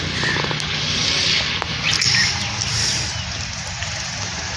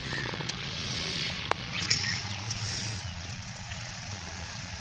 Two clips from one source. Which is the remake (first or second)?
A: second